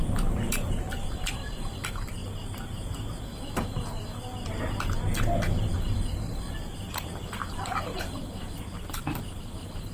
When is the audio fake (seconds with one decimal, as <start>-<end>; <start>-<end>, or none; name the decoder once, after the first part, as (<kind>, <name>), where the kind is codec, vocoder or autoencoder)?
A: 0.0-2.2 (vocoder, BigVGAN v2); 6.9-9.9